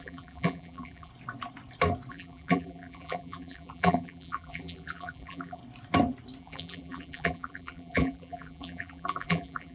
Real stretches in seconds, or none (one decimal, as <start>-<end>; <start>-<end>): 1.1-2.1; 5.6-6.4